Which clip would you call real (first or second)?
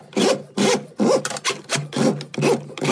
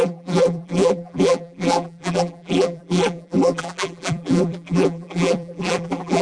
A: first